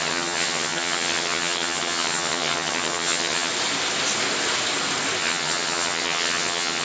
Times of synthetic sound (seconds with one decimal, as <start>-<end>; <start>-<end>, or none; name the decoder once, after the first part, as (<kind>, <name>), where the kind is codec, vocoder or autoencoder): 0.0-3.5 (vocoder, HiFi-GAN); 5.2-6.8